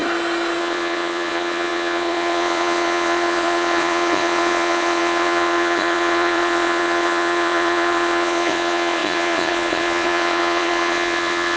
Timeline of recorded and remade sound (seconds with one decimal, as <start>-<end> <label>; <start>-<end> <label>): 0.0-0.6 recorded; 0.6-11.6 remade